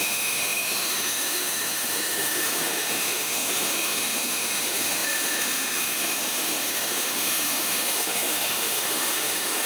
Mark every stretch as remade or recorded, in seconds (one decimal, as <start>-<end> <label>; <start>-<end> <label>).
0.0-9.7 remade